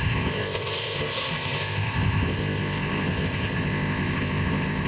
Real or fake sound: fake